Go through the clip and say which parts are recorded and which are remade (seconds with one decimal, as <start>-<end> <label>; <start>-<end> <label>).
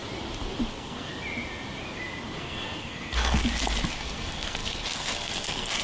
0.0-0.7 recorded; 0.7-1.1 remade; 1.1-2.4 recorded; 2.4-3.4 remade; 3.4-3.9 recorded; 3.9-5.8 remade